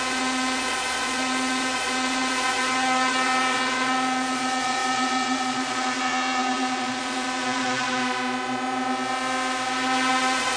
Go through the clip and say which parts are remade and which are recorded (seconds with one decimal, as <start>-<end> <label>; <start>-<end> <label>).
0.0-8.0 remade; 8.0-10.1 recorded; 10.1-10.6 remade